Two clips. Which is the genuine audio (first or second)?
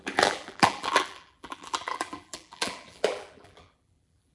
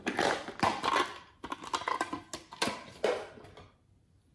second